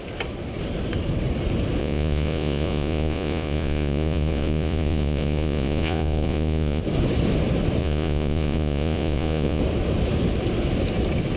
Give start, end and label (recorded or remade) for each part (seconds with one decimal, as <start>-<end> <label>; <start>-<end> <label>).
0.0-1.8 recorded; 1.8-6.8 remade; 6.8-7.8 recorded; 7.8-9.6 remade; 9.6-11.4 recorded